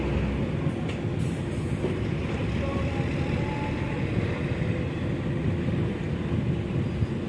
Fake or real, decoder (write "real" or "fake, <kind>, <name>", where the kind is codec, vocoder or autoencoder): real